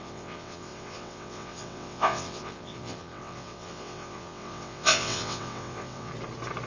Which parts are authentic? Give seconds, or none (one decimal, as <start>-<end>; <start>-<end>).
6.1-6.7